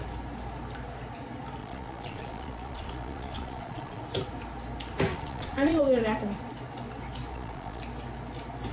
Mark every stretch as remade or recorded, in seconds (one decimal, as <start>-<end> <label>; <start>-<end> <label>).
0.0-1.6 recorded; 1.6-4.0 remade; 4.0-5.1 recorded; 5.1-5.8 remade; 5.8-7.3 recorded; 7.3-7.8 remade; 7.8-8.7 recorded